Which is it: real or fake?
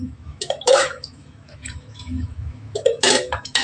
fake